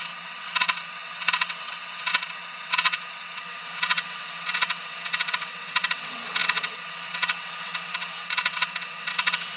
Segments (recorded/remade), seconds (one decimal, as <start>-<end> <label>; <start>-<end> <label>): 0.0-9.6 remade